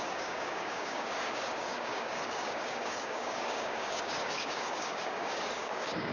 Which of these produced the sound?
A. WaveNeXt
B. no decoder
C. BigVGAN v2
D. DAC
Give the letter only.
D